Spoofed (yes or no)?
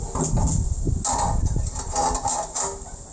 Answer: no